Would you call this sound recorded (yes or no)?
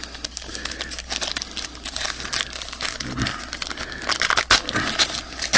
yes